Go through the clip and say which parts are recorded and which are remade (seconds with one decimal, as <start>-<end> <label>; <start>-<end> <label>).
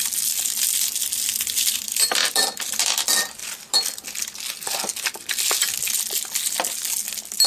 0.0-1.0 recorded; 1.0-2.7 remade; 2.7-7.5 recorded